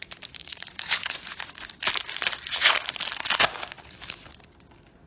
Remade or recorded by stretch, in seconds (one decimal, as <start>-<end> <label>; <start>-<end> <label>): 0.0-0.4 recorded; 0.4-1.6 remade; 1.6-5.1 recorded